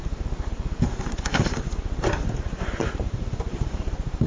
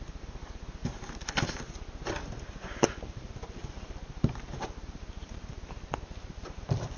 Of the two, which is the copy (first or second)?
first